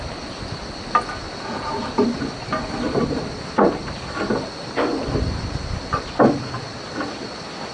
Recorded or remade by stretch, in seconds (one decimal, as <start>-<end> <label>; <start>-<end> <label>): 0.0-7.7 recorded